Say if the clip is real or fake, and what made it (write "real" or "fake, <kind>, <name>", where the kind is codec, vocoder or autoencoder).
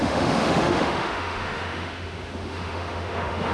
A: fake, autoencoder, DAC-VAE